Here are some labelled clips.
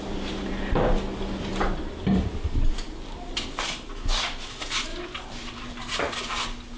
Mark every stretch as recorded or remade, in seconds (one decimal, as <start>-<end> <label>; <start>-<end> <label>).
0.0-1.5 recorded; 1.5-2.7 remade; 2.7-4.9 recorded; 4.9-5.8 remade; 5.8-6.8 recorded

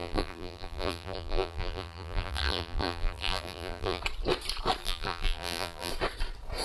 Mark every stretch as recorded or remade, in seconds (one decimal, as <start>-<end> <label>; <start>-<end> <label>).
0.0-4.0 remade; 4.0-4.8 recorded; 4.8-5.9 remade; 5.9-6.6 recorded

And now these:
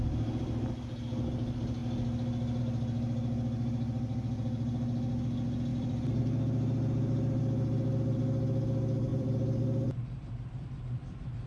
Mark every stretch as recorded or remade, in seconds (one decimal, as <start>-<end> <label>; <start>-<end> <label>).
0.0-5.7 recorded; 5.7-6.2 remade; 6.2-9.1 recorded; 9.1-11.5 remade

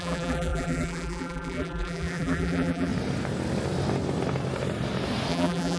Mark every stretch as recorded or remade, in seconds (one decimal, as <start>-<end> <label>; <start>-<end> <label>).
0.0-2.9 remade; 2.9-5.3 recorded; 5.3-5.8 remade

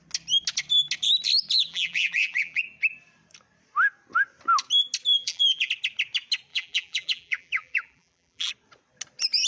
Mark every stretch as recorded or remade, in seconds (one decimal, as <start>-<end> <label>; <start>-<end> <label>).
0.0-1.7 recorded; 1.7-2.6 remade; 2.6-5.1 recorded; 5.1-5.7 remade; 5.7-6.5 recorded; 6.5-8.5 remade; 8.5-9.5 recorded

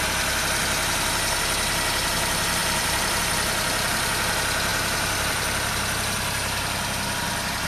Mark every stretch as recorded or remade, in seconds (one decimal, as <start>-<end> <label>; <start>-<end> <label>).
0.0-2.6 recorded; 2.6-3.2 remade; 3.2-4.7 recorded; 4.7-5.7 remade; 5.7-7.7 recorded